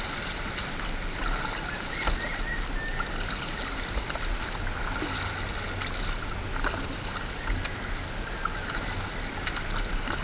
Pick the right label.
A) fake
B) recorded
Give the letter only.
B